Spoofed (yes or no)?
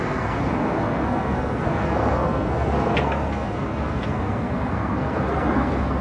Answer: yes